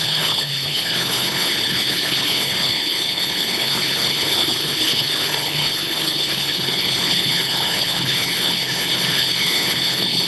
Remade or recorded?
remade